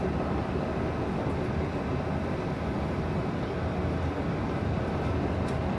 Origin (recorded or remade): recorded